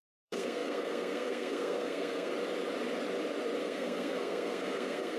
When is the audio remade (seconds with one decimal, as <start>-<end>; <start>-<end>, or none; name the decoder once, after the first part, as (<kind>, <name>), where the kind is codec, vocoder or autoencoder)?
0.0-2.3 (codec, SNAC); 3.6-5.2